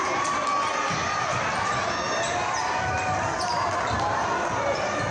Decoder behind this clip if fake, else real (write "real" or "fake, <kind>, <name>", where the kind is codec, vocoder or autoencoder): real